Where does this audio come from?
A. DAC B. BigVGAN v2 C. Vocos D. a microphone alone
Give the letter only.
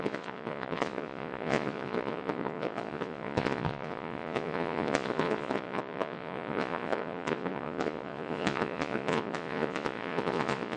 C